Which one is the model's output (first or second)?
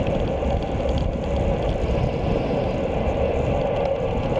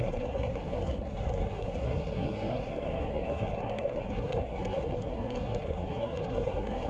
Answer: second